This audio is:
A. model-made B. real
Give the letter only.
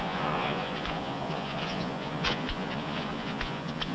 A